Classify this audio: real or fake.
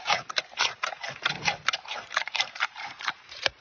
fake